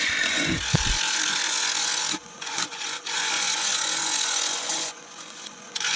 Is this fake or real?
fake